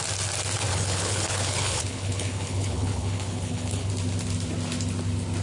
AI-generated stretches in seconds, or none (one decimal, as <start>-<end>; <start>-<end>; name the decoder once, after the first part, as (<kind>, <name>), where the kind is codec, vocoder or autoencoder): 0.7-3.9 (codec, HILCodec)